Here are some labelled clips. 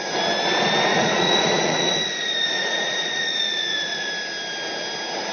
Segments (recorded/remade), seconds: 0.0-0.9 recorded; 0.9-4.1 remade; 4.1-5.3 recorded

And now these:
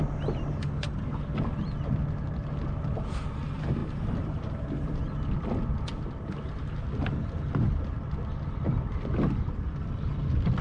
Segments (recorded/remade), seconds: 0.0-10.6 recorded

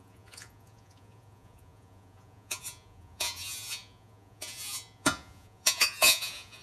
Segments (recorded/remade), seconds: 0.0-6.6 remade

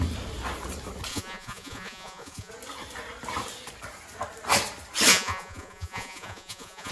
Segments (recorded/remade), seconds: 0.0-1.1 recorded; 1.1-2.5 remade; 2.5-5.1 recorded; 5.1-6.9 remade